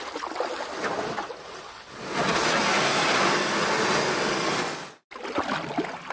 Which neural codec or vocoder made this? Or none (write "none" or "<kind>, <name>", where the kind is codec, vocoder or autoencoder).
none